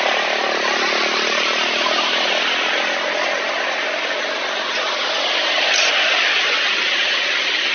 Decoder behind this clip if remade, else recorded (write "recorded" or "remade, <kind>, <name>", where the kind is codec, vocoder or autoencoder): recorded